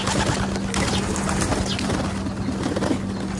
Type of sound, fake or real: real